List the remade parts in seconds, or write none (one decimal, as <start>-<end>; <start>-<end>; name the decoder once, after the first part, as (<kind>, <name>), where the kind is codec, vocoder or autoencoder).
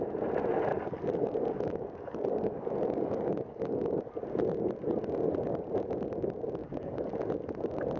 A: 0.7-4.0 (codec, DAC); 6.6-7.1